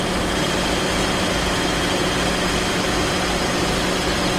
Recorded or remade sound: recorded